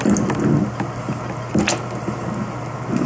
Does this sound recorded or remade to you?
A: recorded